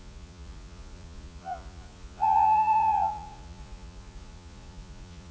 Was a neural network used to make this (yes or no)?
yes